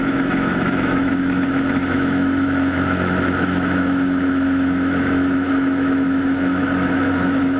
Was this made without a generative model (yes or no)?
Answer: no